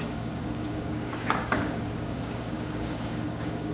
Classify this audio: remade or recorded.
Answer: remade